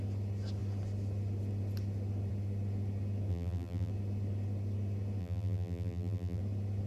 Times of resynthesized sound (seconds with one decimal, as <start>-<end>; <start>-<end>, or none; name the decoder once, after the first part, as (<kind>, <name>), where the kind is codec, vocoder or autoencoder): 3.3-3.9 (vocoder, BigVGAN v2); 5.2-6.4